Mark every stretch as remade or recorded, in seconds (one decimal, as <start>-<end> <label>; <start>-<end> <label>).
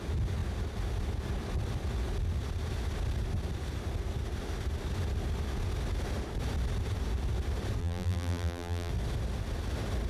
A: 0.0-7.8 recorded; 7.8-8.9 remade; 8.9-10.1 recorded